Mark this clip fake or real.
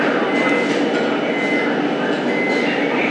real